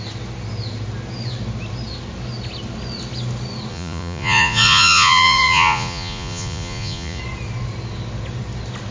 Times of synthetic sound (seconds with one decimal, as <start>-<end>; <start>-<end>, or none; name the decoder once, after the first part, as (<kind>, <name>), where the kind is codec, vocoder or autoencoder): 3.7-7.2 (vocoder, Vocos)